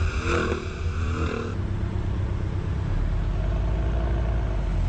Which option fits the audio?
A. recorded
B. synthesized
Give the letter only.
A